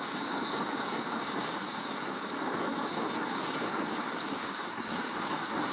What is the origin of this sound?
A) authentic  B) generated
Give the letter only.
B